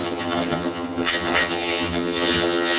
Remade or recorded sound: remade